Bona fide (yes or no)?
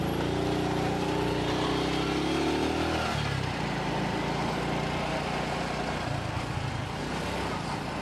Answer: yes